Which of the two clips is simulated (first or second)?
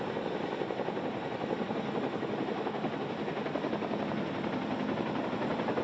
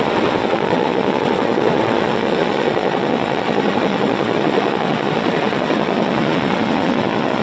second